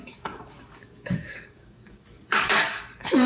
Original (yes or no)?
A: no